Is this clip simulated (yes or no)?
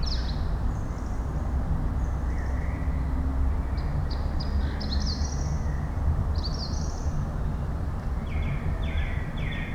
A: no